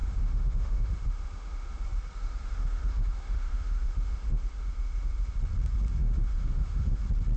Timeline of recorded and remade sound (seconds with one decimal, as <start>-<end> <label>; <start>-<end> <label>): 0.0-1.8 remade; 1.8-2.2 recorded; 2.2-5.3 remade; 5.3-6.0 recorded; 6.0-7.0 remade; 7.0-7.4 recorded